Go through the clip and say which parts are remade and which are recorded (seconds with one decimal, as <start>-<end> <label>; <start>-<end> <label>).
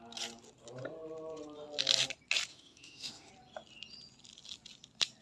0.0-2.5 recorded; 2.5-3.3 remade; 3.3-5.2 recorded